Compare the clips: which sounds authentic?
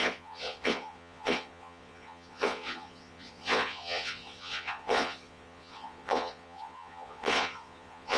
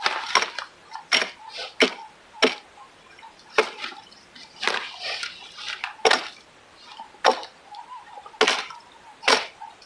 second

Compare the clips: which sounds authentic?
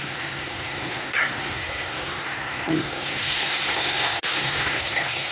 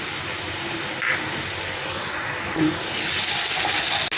second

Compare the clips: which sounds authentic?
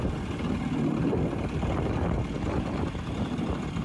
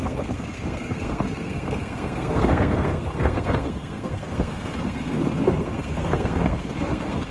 first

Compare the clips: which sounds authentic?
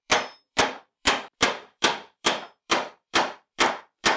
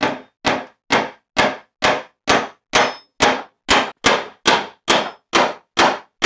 second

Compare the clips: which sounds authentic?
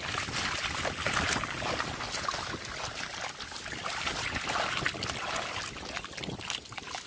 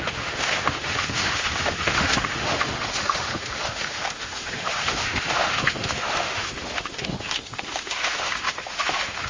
first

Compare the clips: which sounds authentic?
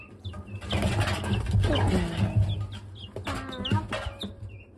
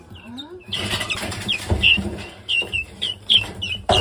first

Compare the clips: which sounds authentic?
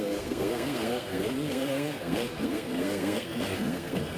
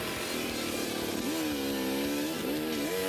second